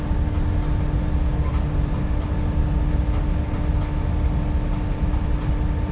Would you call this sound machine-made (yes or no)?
no